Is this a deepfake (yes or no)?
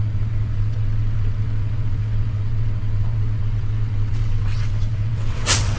yes